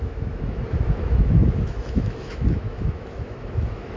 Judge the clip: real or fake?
fake